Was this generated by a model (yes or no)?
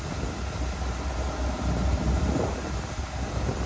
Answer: no